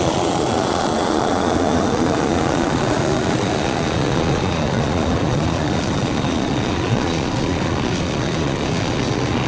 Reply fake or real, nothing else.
fake